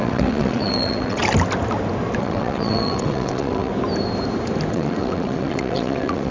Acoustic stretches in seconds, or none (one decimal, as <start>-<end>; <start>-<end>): 1.2-2.2; 3.7-4.7